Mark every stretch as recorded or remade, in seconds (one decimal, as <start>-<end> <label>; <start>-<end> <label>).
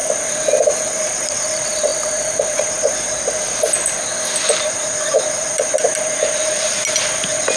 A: 0.0-7.6 recorded